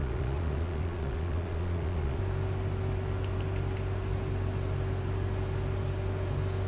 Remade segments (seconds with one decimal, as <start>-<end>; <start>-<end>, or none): 0.0-2.2